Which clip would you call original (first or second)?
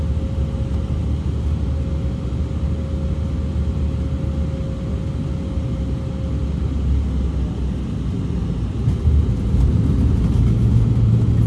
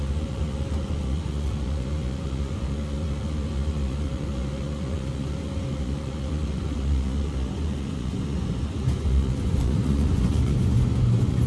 first